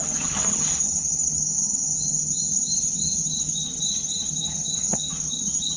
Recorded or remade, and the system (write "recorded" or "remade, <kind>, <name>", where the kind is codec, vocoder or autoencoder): remade, vocoder, HiFi-GAN